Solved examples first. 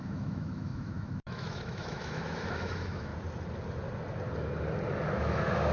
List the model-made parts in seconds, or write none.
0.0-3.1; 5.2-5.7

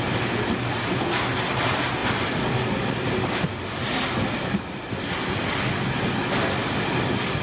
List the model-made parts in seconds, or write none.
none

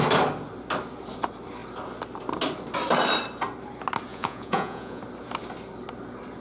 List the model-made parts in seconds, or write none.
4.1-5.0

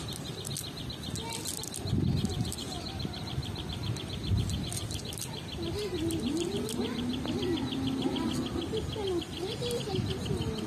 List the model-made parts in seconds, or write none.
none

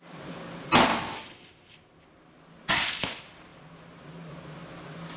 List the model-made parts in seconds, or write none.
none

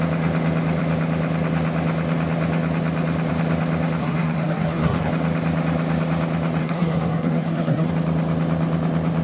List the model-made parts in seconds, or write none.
4.0-5.1; 6.6-7.9